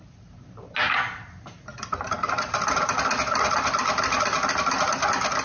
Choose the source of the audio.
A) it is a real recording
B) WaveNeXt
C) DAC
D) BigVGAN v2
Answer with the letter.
A